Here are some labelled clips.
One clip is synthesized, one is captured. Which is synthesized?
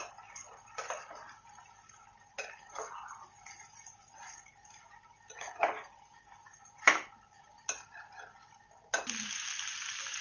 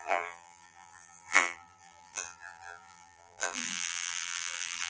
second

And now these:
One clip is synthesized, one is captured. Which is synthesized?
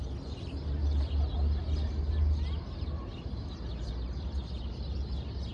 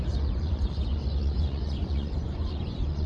second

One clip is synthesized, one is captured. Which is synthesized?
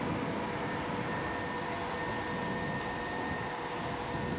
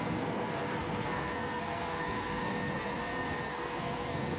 second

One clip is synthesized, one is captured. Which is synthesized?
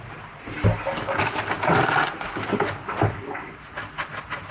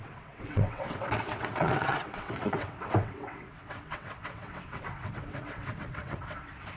second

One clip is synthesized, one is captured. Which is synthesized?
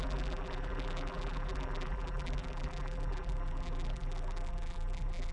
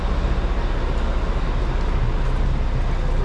first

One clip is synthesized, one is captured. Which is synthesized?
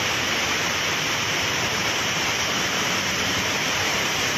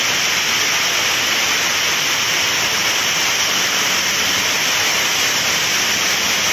first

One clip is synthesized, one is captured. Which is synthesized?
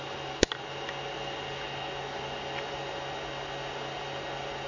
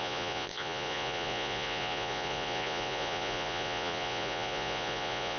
second